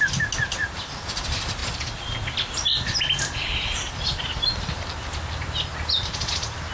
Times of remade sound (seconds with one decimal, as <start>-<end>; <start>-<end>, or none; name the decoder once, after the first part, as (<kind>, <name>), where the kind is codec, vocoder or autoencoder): none